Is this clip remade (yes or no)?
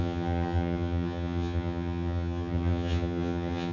yes